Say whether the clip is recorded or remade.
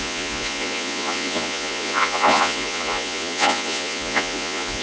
remade